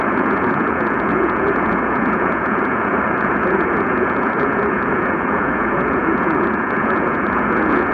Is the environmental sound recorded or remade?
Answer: remade